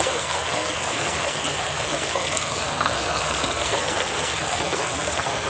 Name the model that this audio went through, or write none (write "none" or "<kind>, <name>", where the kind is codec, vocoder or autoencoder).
codec, SNAC